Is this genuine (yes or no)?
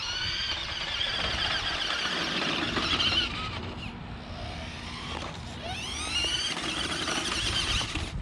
yes